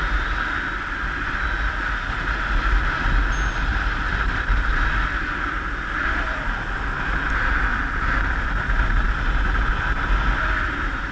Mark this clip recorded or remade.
recorded